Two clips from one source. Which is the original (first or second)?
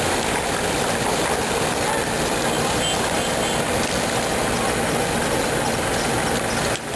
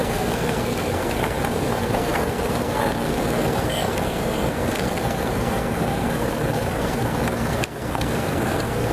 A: first